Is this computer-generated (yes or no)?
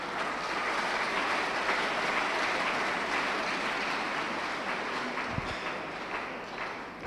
no